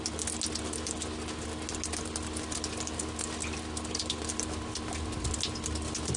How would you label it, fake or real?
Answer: real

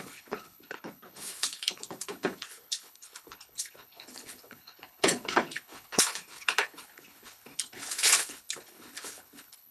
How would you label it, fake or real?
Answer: fake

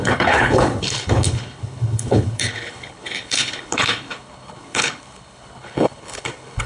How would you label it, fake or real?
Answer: fake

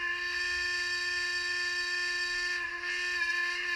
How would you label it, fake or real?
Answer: real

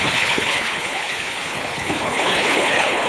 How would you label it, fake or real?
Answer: fake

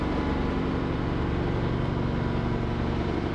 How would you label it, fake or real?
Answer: real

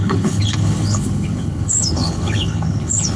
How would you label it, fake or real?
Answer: fake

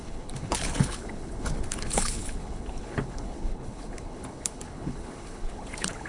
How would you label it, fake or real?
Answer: fake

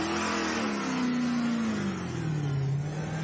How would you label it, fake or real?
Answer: real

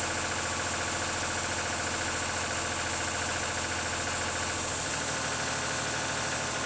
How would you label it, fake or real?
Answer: real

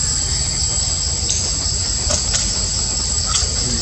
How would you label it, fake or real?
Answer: real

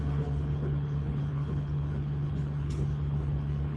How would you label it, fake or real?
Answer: fake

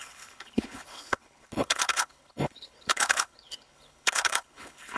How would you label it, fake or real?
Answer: fake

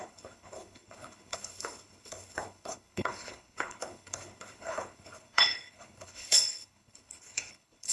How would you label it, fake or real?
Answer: fake